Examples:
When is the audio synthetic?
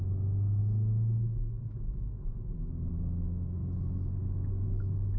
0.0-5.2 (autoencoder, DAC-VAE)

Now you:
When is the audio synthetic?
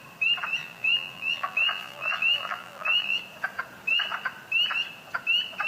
0.6-3.2 (vocoder, BigVGAN v2)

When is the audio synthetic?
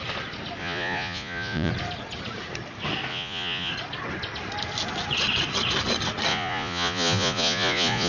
0.6-1.7 (vocoder, Vocos); 3.1-3.7; 6.3-8.1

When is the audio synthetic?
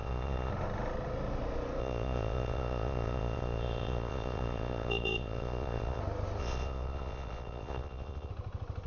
0.0-0.5 (vocoder, Vocos); 1.8-6.0; 6.4-8.3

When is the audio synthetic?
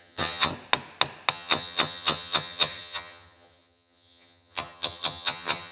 0.0-0.5 (vocoder, HiFi-GAN); 1.3-5.7